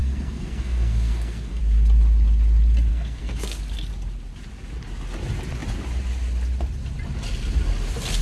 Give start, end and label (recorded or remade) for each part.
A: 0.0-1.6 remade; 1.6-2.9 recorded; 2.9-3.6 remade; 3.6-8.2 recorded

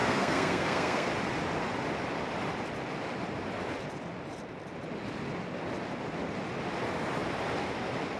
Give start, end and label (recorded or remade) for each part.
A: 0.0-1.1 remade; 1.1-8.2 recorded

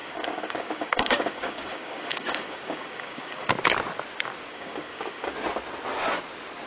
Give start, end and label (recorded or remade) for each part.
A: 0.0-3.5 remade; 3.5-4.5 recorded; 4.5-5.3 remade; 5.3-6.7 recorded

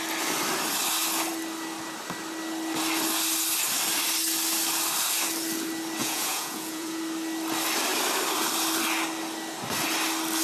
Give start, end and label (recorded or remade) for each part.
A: 0.0-6.0 recorded; 6.0-7.0 remade; 7.0-10.4 recorded